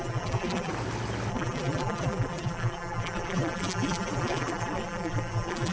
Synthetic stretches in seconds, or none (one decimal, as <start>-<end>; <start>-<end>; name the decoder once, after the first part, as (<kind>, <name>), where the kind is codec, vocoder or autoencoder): 0.0-0.7 (vocoder, BigVGAN v2); 1.3-5.7